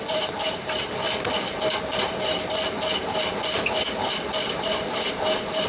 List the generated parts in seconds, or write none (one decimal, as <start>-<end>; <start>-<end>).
0.0-1.0; 4.4-5.7